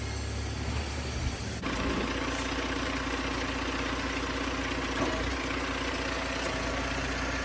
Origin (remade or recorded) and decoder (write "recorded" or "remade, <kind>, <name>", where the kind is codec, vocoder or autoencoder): recorded